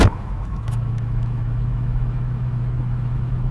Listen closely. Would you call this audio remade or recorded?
remade